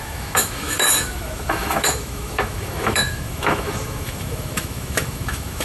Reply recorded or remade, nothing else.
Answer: remade